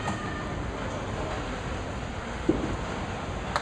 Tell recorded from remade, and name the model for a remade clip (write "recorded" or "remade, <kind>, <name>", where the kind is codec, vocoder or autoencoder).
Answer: recorded